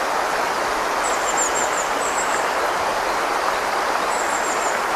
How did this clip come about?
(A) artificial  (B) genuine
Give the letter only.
B